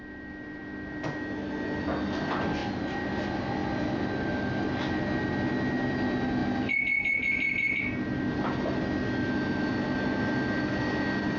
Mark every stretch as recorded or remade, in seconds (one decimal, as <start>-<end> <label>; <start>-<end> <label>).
0.0-11.4 recorded